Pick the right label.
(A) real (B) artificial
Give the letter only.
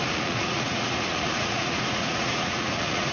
B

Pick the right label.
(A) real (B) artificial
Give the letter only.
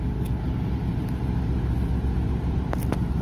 A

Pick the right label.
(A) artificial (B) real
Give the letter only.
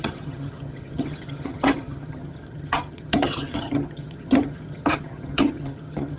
A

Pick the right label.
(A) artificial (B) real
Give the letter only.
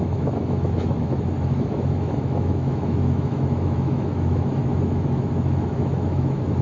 A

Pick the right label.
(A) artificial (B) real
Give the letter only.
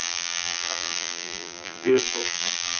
A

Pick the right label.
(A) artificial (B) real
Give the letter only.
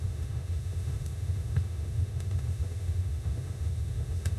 A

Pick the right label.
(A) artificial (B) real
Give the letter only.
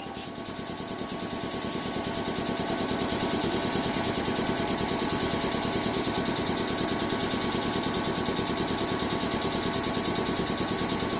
B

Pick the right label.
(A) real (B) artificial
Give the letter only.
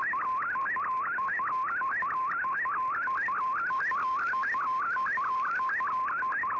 A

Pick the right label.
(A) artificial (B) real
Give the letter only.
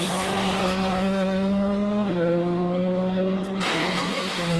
A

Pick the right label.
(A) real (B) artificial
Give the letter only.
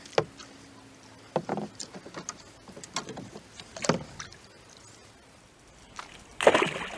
A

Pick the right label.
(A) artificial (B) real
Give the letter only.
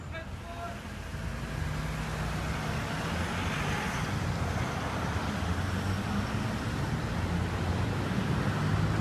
B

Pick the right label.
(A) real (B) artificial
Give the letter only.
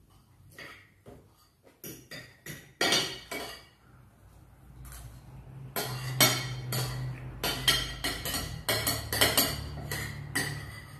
A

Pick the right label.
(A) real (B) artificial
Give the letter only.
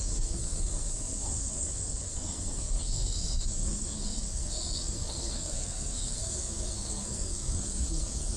B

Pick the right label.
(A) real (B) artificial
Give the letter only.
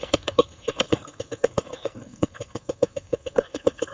B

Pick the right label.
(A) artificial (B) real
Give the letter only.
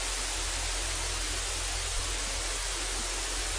B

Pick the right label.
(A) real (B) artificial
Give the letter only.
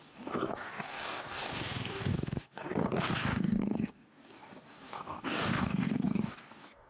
B